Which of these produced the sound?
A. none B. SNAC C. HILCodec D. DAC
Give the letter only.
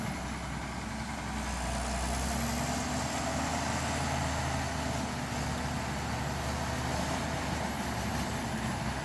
A